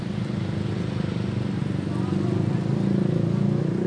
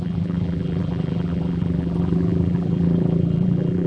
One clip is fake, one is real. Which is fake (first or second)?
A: second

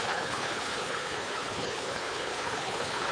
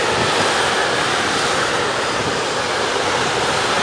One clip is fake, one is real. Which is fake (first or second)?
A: first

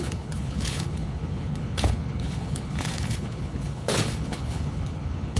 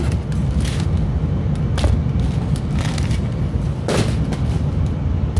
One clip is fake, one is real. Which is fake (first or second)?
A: first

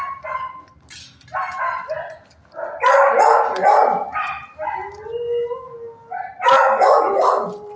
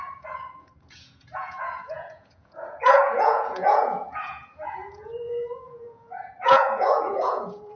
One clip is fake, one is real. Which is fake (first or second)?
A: second